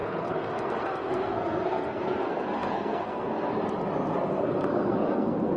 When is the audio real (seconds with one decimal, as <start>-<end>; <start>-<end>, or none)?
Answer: 3.5-4.3